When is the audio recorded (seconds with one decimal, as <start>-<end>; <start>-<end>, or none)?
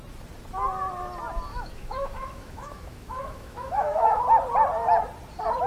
0.0-1.5; 4.2-5.7